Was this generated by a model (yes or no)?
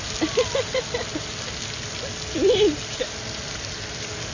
no